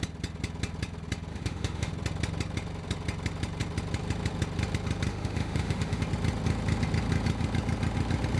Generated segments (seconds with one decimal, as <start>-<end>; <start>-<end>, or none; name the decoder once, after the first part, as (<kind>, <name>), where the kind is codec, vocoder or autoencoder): 1.3-1.9 (autoencoder, DAC-VAE); 5.1-6.0